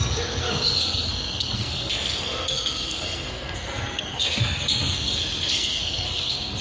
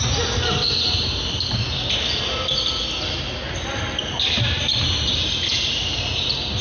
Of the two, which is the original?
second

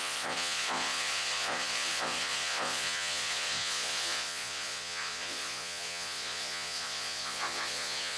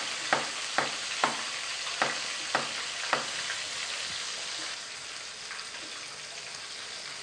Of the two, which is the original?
second